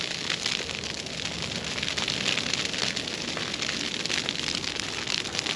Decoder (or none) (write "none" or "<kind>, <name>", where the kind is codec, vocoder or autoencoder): none